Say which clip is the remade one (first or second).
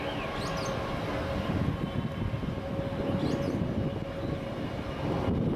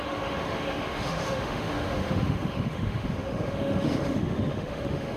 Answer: second